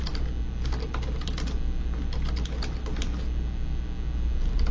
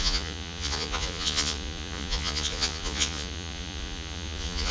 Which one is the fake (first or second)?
second